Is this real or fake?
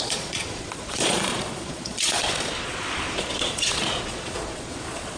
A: fake